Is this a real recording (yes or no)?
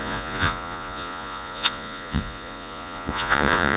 no